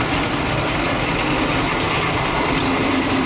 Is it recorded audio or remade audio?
recorded